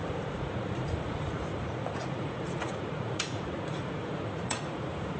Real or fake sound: fake